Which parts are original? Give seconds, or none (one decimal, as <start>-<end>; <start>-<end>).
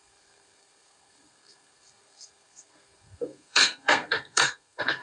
none